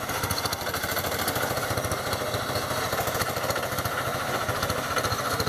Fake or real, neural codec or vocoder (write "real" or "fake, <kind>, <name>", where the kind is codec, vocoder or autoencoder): fake, vocoder, BigVGAN v2